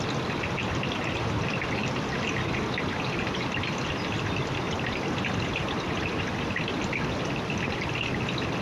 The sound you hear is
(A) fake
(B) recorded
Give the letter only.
B